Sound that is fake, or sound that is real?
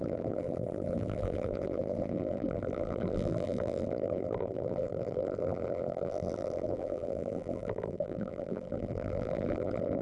fake